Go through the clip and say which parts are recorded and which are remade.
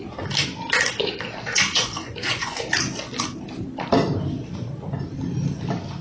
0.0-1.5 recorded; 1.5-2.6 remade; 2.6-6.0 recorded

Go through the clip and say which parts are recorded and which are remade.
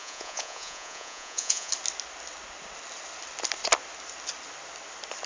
0.0-1.7 remade; 1.7-5.3 recorded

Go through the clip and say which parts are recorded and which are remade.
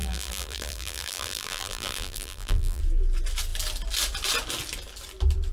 0.0-2.8 remade; 2.8-5.5 recorded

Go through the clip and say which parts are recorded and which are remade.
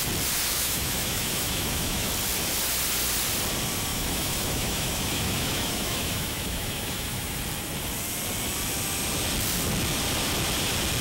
0.0-0.5 recorded; 0.5-2.1 remade; 2.1-3.9 recorded; 3.9-7.4 remade; 7.4-11.0 recorded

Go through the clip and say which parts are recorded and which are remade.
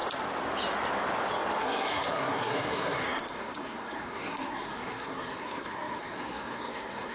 0.0-1.6 recorded; 1.6-7.1 remade